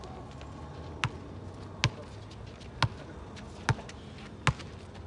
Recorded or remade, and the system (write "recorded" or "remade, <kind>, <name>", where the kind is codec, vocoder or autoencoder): recorded